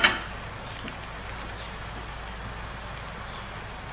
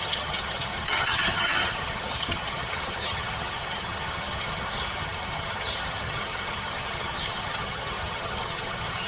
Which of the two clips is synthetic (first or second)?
second